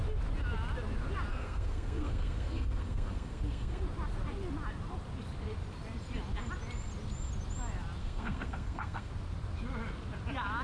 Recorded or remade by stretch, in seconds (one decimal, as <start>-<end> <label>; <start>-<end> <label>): 0.0-1.3 recorded; 1.3-3.8 remade; 3.8-8.0 recorded; 8.0-9.1 remade; 9.1-10.6 recorded